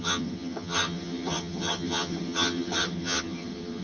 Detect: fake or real fake